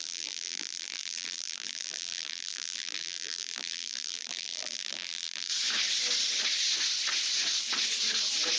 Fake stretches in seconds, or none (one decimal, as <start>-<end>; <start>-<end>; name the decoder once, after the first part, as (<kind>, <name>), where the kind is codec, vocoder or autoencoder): 0.0-5.5 (vocoder, BigVGAN v2)